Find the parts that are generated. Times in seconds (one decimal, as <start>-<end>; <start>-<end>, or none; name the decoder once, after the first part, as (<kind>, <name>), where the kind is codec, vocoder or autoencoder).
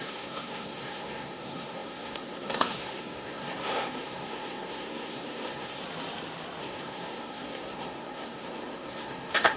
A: 0.0-5.8 (codec, SNAC); 6.6-9.6